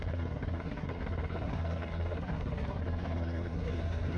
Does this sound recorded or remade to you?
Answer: remade